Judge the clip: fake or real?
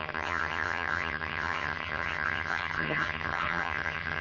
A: fake